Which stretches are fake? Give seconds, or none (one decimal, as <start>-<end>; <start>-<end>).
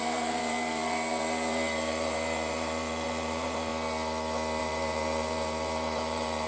0.0-3.7; 4.6-6.5